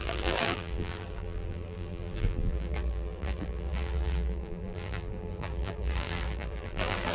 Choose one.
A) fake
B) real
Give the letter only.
A